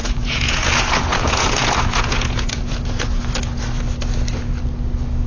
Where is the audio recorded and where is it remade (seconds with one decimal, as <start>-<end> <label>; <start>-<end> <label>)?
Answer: 0.0-3.2 remade; 3.2-5.3 recorded